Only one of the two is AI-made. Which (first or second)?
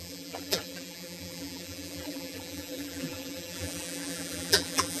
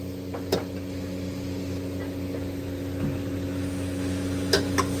first